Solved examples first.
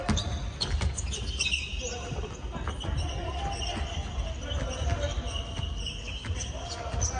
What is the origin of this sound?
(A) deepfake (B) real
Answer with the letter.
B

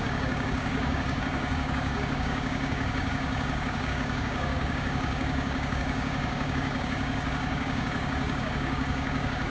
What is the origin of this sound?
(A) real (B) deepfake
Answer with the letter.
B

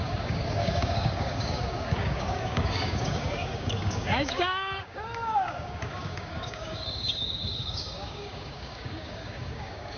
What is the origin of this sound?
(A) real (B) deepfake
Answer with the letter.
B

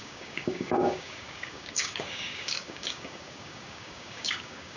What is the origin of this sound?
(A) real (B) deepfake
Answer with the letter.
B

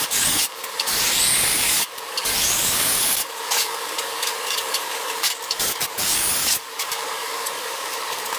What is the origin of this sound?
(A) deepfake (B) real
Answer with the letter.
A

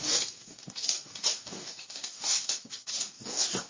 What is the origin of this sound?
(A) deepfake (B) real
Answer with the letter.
A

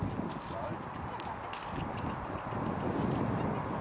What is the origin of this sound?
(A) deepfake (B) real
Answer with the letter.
B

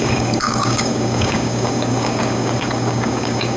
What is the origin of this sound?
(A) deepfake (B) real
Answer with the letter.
A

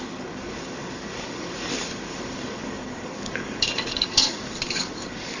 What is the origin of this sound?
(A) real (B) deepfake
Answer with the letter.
B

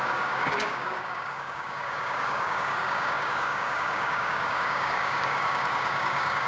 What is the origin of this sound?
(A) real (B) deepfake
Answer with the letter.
B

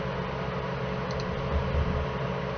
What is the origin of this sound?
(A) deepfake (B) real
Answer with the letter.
B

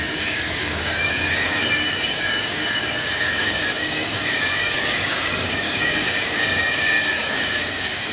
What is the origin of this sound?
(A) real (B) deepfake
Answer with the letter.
B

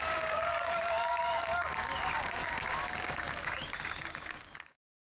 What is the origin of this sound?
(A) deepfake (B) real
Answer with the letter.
A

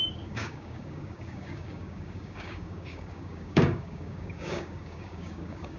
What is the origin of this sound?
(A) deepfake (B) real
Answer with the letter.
A